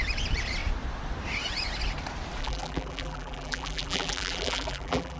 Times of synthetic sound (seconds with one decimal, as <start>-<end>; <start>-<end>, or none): 2.4-5.2